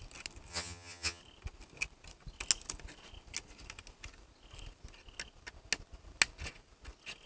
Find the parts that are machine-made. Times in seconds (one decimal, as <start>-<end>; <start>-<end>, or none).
0.5-1.2